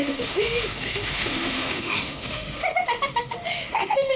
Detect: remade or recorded remade